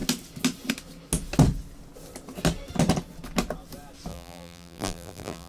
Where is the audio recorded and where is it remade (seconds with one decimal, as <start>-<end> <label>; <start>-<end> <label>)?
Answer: 0.0-4.1 recorded; 4.1-5.5 remade